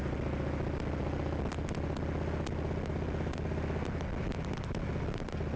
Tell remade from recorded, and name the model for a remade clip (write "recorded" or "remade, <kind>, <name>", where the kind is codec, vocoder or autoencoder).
recorded